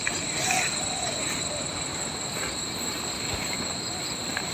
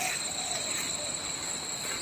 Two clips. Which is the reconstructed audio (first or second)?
second